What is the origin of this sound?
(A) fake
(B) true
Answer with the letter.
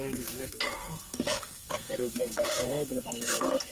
A